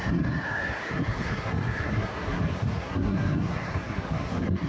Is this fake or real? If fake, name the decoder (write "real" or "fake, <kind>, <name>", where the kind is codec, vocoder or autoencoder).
fake, codec, SNAC